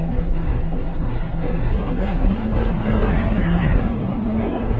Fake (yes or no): yes